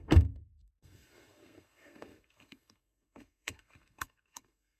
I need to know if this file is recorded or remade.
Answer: remade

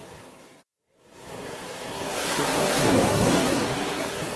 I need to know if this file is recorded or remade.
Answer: remade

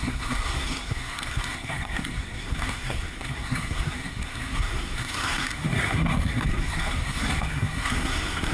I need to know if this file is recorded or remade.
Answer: remade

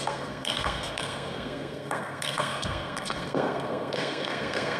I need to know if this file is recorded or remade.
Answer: remade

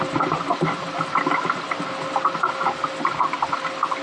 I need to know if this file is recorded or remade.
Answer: recorded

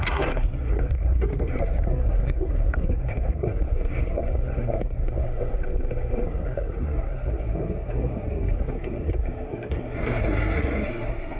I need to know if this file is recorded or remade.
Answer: remade